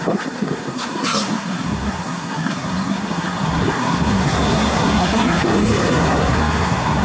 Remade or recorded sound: remade